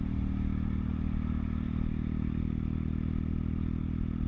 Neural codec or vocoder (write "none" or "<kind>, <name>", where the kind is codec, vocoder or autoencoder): none